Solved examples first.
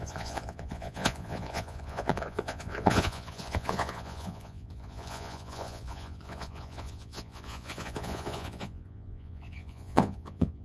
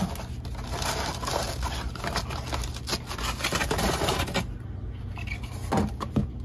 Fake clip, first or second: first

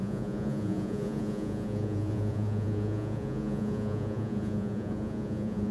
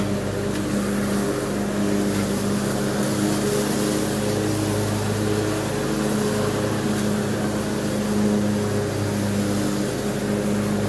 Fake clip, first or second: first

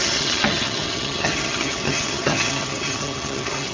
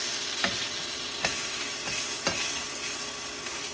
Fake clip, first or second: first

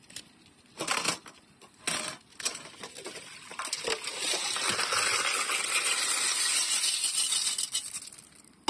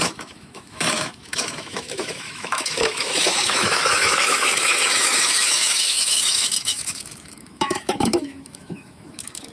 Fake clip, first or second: second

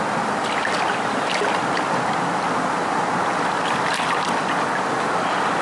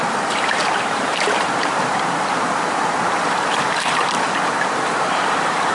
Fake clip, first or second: second